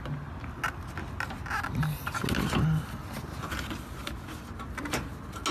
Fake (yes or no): no